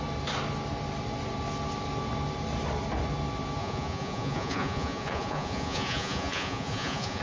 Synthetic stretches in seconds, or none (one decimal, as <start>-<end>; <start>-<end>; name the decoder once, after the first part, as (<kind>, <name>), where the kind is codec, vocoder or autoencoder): 3.6-7.2 (vocoder, Vocos)